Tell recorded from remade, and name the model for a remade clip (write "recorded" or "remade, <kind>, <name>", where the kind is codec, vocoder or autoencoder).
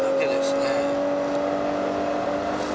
recorded